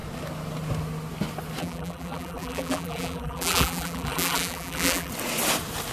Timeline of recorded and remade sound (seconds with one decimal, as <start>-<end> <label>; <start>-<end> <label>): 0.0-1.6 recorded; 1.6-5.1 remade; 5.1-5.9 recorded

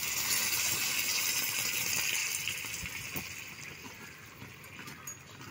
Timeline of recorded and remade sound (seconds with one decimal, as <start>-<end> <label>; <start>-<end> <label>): 0.0-2.2 recorded; 2.2-2.7 remade; 2.7-5.5 recorded

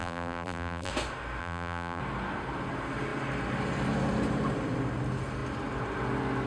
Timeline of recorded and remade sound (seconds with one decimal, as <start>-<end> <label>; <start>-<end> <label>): 0.0-0.9 remade; 0.9-1.4 recorded; 1.4-2.0 remade; 2.0-6.5 recorded

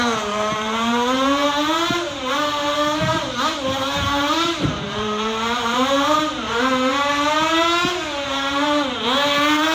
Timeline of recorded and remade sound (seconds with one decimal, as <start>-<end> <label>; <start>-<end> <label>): 0.0-9.7 remade

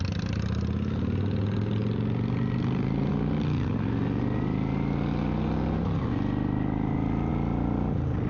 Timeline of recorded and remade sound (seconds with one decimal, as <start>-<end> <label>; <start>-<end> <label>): 0.0-8.3 recorded